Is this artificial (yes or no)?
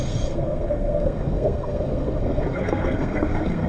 yes